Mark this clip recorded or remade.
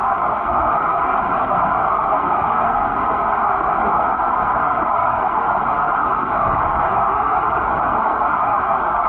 remade